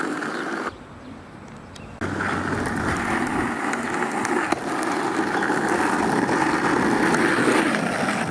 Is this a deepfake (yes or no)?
no